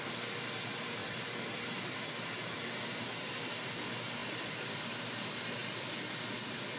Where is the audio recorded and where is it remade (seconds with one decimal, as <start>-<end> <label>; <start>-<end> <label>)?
0.0-1.0 recorded; 1.0-3.7 remade; 3.7-4.2 recorded; 4.2-4.9 remade; 4.9-6.8 recorded